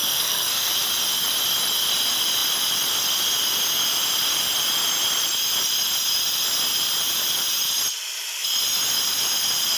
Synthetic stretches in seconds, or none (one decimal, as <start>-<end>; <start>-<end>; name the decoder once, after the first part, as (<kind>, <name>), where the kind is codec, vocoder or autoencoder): 0.0-0.7 (codec, SNAC)